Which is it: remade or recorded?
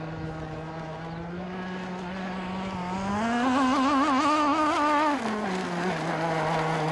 recorded